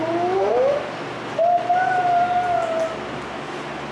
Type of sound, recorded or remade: recorded